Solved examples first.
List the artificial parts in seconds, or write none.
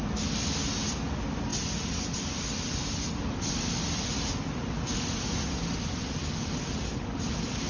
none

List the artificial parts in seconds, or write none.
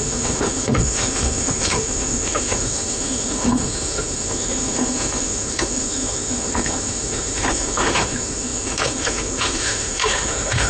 0.0-10.7 (autoencoder, DAC-VAE)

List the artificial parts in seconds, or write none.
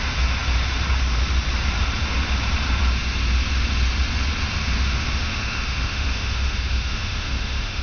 4.6-7.8 (autoencoder, DAC-VAE)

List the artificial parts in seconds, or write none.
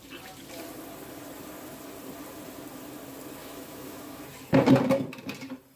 3.4-4.2 (autoencoder, DAC-VAE)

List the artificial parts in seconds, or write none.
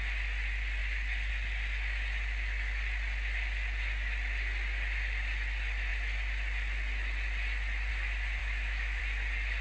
8.4-9.0 (autoencoder, DAC-VAE)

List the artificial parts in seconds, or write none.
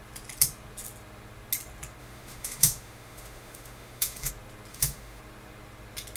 2.0-4.3 (autoencoder, DAC-VAE); 4.7-5.2